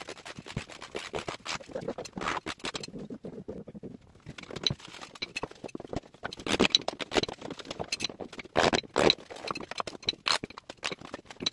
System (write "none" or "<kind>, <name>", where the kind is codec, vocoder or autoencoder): none